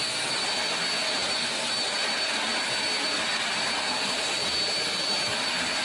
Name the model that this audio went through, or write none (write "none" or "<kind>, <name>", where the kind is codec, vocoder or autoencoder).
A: none